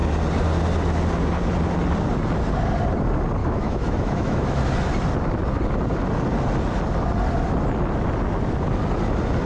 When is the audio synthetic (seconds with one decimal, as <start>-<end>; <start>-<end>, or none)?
3.4-4.6

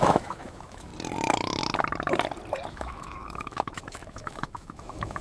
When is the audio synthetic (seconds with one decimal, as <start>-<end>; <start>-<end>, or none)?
0.0-0.9; 2.7-5.2